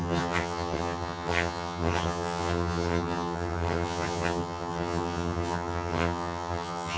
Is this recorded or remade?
remade